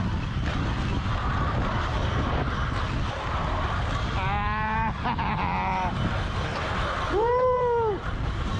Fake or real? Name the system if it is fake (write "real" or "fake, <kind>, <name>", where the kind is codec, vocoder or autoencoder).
real